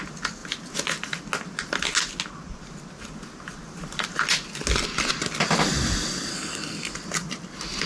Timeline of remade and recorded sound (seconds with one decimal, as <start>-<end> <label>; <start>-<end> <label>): 0.0-6.3 recorded; 6.3-6.9 remade; 6.9-7.9 recorded